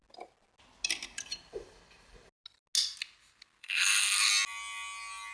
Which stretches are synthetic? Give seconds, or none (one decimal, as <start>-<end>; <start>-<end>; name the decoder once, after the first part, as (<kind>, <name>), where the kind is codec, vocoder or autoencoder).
3.6-4.3 (codec, SNAC)